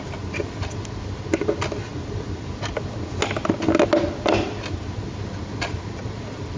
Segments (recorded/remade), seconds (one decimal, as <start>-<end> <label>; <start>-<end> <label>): 0.0-6.6 recorded